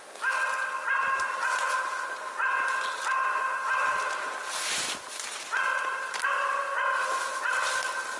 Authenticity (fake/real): real